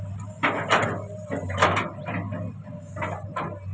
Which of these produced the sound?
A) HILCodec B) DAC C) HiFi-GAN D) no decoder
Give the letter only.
D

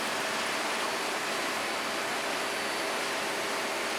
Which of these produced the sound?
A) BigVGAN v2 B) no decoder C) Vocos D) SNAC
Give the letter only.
B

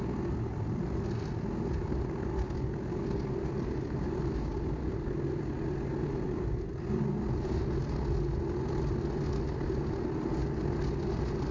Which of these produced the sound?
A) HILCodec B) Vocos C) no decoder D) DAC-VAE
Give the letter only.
C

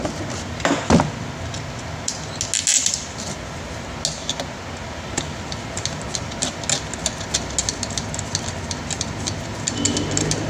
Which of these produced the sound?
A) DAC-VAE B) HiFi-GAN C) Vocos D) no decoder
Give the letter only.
D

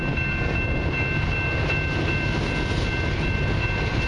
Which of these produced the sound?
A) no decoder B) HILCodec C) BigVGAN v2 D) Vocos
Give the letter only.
A